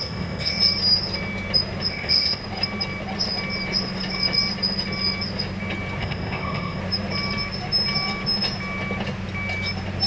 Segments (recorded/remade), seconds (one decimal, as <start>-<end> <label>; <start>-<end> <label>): 0.0-0.6 remade; 0.6-1.9 recorded; 1.9-2.4 remade; 2.4-6.0 recorded; 6.0-6.8 remade; 6.8-10.1 recorded